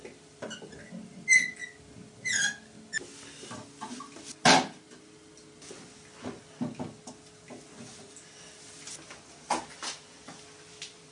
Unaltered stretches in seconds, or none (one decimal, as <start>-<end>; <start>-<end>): 0.0-11.1